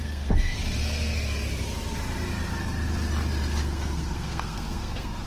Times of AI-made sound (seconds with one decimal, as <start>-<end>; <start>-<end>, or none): 0.0-0.6; 3.6-5.3